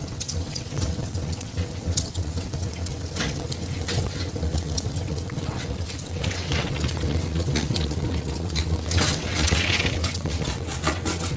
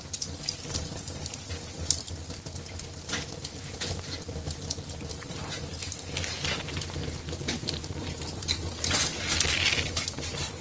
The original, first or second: second